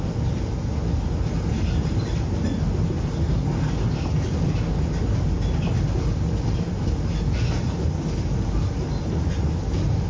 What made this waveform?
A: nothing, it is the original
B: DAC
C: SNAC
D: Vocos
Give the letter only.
A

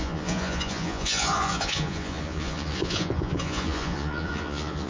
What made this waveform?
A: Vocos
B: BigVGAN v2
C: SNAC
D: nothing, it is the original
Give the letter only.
A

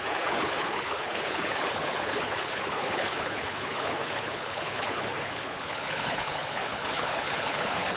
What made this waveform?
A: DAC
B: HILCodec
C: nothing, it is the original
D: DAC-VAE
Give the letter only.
B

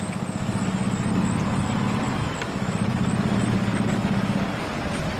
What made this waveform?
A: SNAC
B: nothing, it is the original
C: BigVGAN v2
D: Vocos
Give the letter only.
B